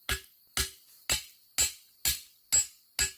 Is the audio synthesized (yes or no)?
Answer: no